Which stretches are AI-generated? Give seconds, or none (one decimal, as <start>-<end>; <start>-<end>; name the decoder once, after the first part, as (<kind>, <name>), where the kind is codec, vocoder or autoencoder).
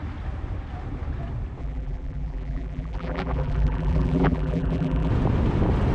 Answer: 1.6-5.1 (vocoder, BigVGAN v2)